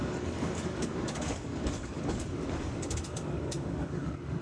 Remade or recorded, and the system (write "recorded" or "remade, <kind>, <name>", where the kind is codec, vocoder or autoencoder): remade, codec, DAC